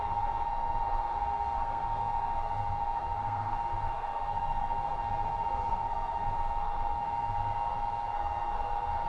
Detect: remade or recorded remade